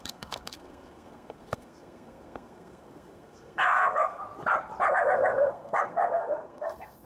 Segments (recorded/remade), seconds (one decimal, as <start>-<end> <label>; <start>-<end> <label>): 0.0-4.2 remade; 4.2-4.9 recorded; 4.9-7.1 remade